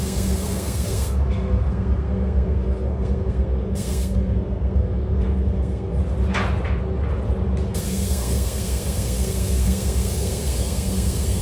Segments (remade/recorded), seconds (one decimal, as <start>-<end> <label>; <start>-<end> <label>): 0.0-6.0 remade; 6.0-7.7 recorded; 7.7-11.4 remade